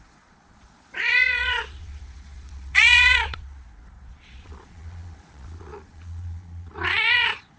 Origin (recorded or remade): remade